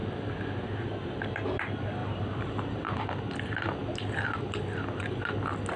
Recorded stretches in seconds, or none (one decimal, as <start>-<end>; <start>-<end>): 0.0-2.0; 3.0-5.8